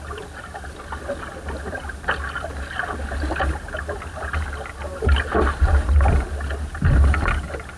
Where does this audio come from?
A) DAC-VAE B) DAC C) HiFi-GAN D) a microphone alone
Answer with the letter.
D